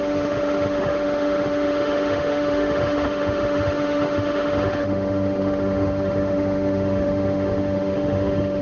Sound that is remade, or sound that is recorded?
remade